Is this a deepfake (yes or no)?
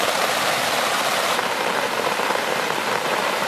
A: yes